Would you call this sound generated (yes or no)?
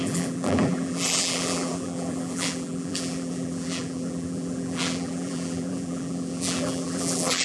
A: yes